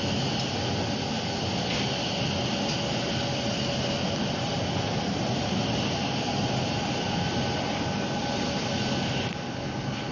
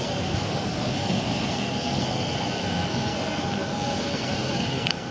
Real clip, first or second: first